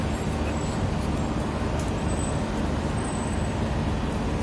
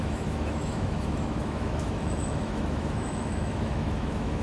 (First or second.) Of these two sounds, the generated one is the second